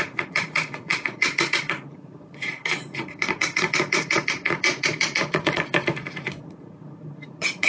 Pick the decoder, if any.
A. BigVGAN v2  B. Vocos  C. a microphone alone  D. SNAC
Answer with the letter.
B